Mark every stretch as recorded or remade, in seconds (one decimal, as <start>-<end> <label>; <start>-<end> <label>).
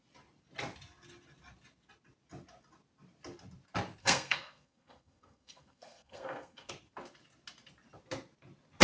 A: 0.0-4.0 recorded; 4.0-6.7 remade; 6.7-8.8 recorded